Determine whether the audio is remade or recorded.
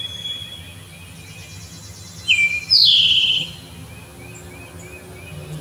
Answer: recorded